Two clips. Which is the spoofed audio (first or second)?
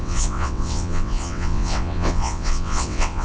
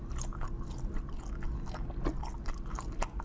first